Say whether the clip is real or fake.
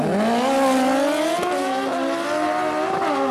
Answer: real